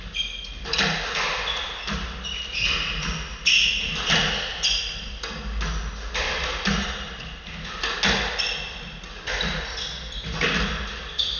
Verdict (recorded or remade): recorded